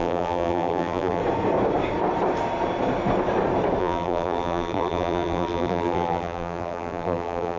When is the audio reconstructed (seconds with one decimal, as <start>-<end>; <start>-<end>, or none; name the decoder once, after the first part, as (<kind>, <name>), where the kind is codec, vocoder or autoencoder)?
0.0-1.2 (vocoder, BigVGAN v2); 3.8-7.6